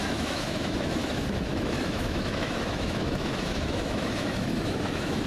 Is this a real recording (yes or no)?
no